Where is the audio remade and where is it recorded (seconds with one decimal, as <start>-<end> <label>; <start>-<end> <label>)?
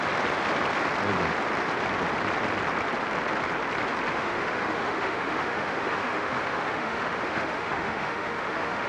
0.0-4.1 recorded; 4.1-8.9 remade